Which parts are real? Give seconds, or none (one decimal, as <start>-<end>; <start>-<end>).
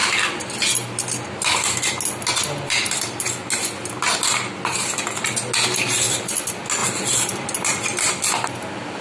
0.0-9.0